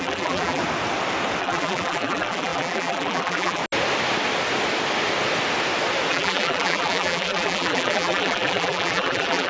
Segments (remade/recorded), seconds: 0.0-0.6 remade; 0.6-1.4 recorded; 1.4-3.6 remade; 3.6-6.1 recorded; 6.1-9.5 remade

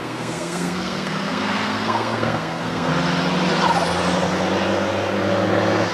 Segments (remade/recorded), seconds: 0.0-2.9 remade; 2.9-5.9 recorded